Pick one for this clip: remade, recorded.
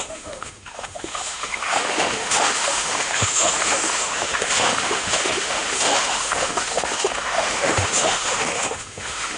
remade